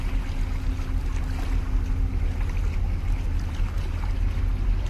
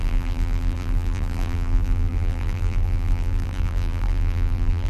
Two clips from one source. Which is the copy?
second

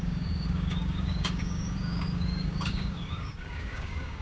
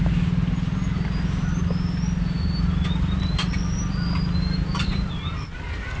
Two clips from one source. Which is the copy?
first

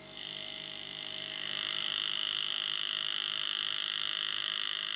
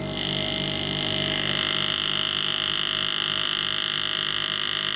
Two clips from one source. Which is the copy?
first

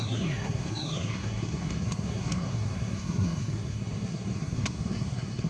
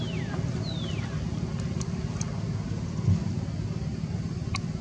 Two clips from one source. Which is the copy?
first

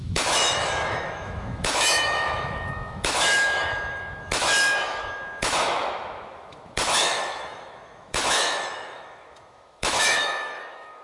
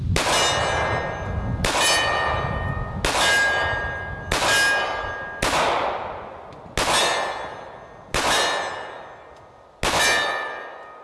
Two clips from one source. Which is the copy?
first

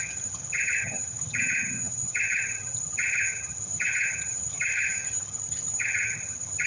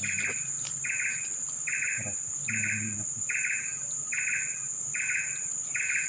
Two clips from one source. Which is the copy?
first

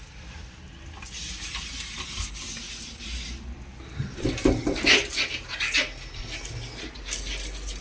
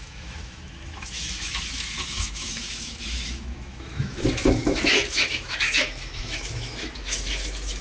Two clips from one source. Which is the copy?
second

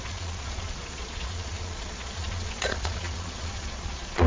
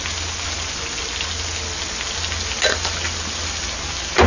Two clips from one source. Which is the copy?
first